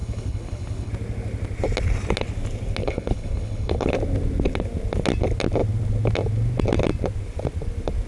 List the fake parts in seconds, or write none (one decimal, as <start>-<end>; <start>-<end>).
0.0-0.9; 2.8-3.9